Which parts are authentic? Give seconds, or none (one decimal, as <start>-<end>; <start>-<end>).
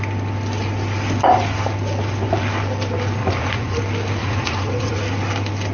0.0-3.2; 3.8-4.2; 4.9-5.7